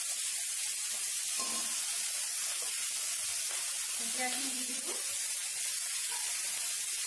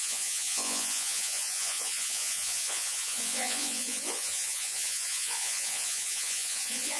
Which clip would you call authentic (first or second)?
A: first